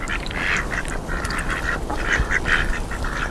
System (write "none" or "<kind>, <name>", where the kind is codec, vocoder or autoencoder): none